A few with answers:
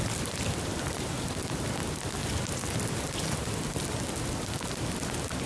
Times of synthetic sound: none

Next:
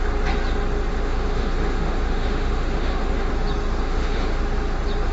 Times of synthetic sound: 0.9-3.3 (autoencoder, DAC-VAE); 3.8-4.4